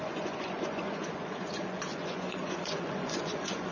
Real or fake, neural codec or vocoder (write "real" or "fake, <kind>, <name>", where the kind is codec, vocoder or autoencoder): fake, vocoder, Vocos